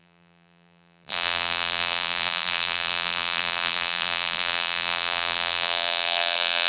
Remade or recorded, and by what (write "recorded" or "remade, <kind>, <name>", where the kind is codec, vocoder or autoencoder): remade, vocoder, BigVGAN v2